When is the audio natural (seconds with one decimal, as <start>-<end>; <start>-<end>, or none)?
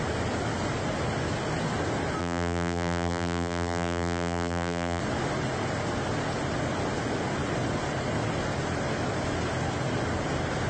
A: 0.0-2.2; 5.0-10.7